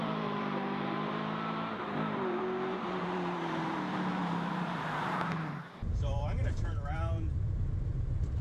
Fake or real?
fake